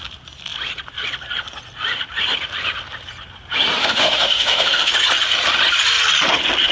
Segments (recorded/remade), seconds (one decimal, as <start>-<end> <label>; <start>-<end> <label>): 0.0-3.8 recorded; 3.8-4.9 remade; 4.9-6.7 recorded